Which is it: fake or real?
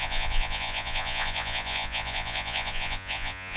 fake